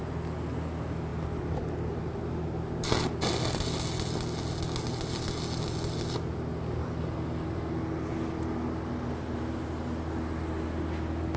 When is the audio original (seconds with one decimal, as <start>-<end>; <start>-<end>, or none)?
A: 0.0-11.4